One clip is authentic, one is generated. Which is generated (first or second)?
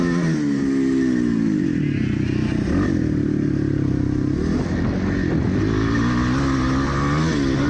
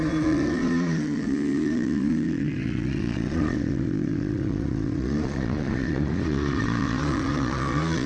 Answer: second